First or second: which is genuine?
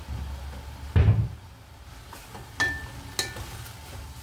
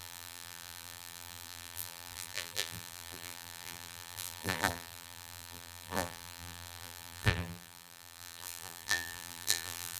first